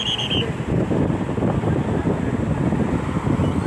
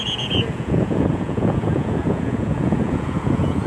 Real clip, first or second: first